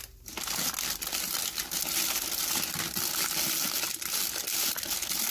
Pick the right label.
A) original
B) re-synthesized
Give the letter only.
A